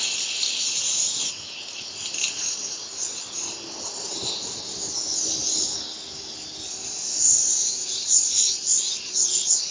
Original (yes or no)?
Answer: yes